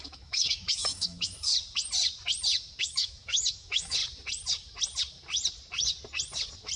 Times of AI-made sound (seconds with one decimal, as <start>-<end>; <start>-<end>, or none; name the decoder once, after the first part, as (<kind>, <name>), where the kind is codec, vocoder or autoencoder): 0.0-1.5 (autoencoder, DAC-VAE); 2.8-4.0